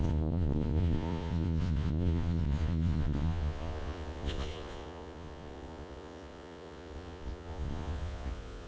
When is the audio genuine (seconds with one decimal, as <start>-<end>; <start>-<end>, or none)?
none

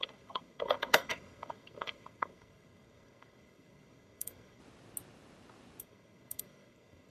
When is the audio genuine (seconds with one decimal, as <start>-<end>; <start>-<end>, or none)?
4.6-5.8

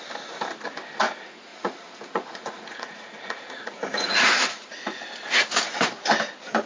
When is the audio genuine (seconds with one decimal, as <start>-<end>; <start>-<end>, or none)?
0.0-1.5; 5.0-6.7

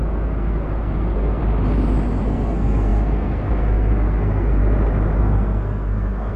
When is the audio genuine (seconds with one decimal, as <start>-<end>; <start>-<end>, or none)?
1.4-2.2; 4.6-5.2

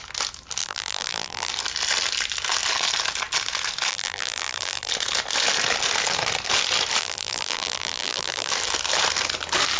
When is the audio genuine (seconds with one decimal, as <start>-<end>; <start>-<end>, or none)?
0.0-0.6; 1.5-3.9; 4.9-7.0; 8.5-9.8

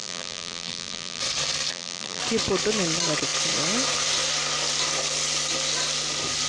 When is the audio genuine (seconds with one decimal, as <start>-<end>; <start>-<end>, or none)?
1.2-1.7; 2.2-6.5

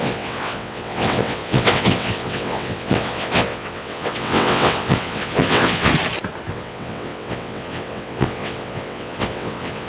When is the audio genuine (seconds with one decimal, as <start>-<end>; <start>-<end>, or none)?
5.9-6.5